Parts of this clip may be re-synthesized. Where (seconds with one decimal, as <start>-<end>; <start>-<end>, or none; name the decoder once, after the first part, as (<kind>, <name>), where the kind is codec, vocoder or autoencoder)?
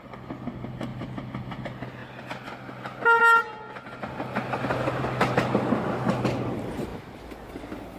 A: 0.9-1.6 (vocoder, BigVGAN v2)